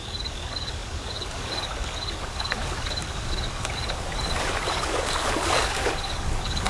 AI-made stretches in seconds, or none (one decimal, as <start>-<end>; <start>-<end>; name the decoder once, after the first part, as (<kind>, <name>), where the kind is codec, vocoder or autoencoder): 0.0-6.7 (codec, DAC)